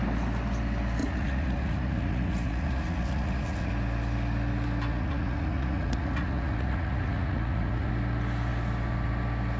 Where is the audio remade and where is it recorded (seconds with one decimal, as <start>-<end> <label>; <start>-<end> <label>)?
0.0-1.0 recorded; 1.0-3.7 remade; 3.7-4.9 recorded; 4.9-7.9 remade; 7.9-9.6 recorded